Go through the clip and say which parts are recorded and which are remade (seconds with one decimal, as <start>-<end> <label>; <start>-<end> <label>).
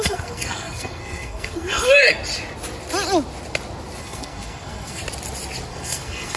0.0-2.2 remade; 2.2-4.0 recorded; 4.0-5.0 remade; 5.0-5.7 recorded; 5.7-6.4 remade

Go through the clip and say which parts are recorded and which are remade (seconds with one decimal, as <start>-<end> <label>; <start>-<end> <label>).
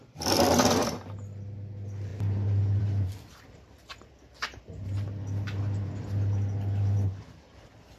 0.0-8.0 recorded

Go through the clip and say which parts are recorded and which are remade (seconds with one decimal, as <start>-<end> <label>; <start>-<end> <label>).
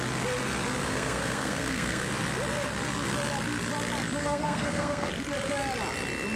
0.0-0.8 recorded; 0.8-2.1 remade; 2.1-4.2 recorded; 4.2-5.1 remade; 5.1-6.4 recorded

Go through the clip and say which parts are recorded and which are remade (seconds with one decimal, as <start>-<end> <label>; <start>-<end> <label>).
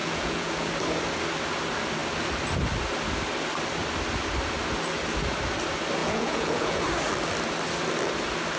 0.0-0.7 remade; 0.7-6.0 recorded; 6.0-6.8 remade; 6.8-8.6 recorded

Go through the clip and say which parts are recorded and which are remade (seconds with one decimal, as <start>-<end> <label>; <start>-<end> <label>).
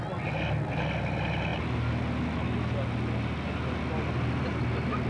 0.0-5.1 recorded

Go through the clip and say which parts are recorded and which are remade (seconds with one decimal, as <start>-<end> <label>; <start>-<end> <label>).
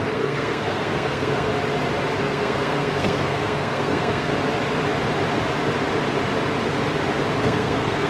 0.0-1.5 remade; 1.5-2.2 recorded; 2.2-4.3 remade; 4.3-7.4 recorded; 7.4-8.1 remade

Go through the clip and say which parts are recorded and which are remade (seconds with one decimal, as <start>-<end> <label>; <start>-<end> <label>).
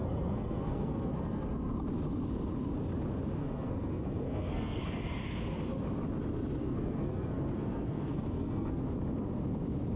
0.0-1.1 remade; 1.1-3.4 recorded; 3.4-4.8 remade; 4.8-6.6 recorded; 6.6-8.8 remade; 8.8-10.0 recorded